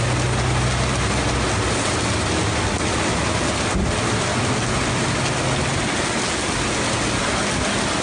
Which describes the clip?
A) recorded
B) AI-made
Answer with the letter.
A